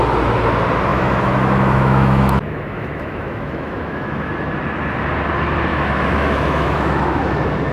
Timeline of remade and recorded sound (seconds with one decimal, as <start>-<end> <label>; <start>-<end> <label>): 0.0-0.9 recorded; 0.9-4.3 remade; 4.3-5.7 recorded; 5.7-7.7 remade